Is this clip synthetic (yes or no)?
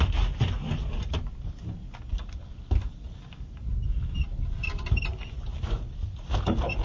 no